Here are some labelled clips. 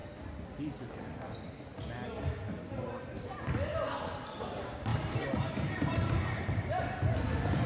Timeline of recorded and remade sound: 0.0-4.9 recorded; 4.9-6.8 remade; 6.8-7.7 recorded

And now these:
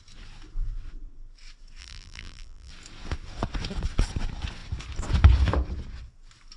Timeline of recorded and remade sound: 0.0-1.8 recorded; 1.8-2.7 remade; 2.7-6.6 recorded

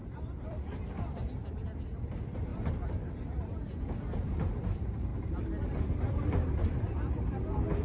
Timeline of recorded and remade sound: 0.0-1.1 remade; 1.1-2.5 recorded; 2.5-4.2 remade; 4.2-7.8 recorded

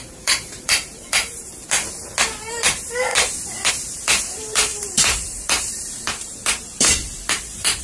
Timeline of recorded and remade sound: 0.0-1.6 remade; 1.6-2.4 recorded; 2.4-3.1 remade; 3.1-3.7 recorded; 3.7-7.8 remade